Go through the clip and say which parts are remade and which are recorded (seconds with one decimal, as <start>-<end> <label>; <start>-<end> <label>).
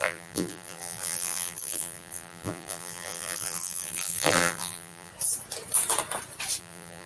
0.0-5.1 remade; 5.1-6.6 recorded; 6.6-7.1 remade